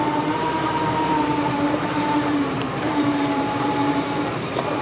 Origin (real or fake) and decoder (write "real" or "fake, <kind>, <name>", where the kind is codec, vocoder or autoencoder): fake, vocoder, BigVGAN v2